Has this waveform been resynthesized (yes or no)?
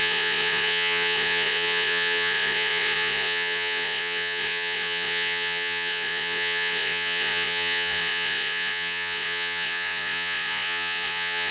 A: yes